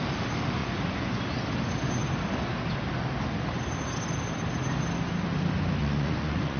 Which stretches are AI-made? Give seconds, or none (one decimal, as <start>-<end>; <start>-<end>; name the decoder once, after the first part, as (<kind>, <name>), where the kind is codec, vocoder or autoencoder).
0.6-1.2 (vocoder, Vocos); 5.8-6.6

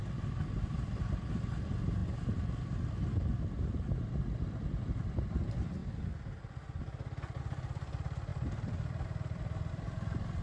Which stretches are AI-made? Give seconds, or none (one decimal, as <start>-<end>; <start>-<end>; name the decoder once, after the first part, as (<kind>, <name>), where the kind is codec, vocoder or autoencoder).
0.0-5.8 (vocoder, BigVGAN v2); 7.4-10.4